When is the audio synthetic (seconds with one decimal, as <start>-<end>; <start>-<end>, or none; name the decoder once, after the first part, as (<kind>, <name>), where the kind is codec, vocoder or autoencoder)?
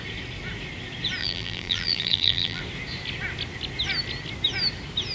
1.2-2.6 (vocoder, BigVGAN v2)